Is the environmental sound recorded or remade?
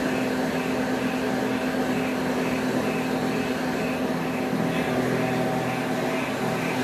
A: recorded